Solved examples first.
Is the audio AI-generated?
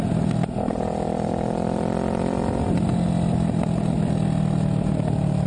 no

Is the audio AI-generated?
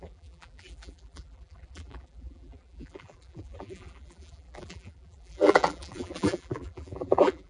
yes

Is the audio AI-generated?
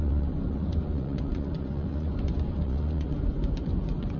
yes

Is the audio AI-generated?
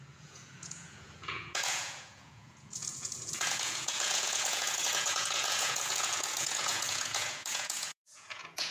yes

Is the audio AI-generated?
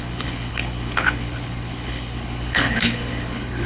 yes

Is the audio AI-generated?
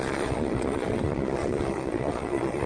yes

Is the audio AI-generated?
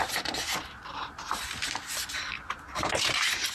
no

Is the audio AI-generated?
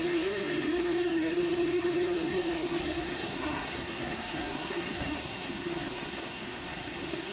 yes